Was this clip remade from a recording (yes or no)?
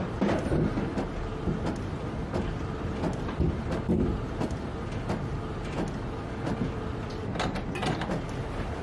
no